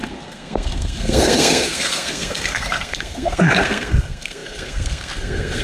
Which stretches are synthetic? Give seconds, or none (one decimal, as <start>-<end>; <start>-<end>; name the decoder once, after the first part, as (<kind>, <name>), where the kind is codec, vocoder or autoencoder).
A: 0.0-5.6 (codec, SNAC)